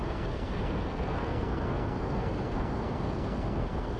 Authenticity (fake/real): fake